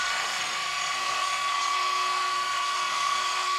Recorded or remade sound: remade